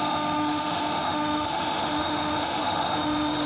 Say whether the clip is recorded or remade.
remade